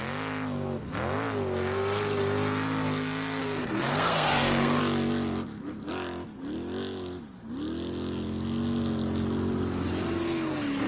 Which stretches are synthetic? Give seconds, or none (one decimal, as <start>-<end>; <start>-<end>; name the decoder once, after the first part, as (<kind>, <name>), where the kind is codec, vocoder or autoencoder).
3.4-4.8 (codec, SNAC)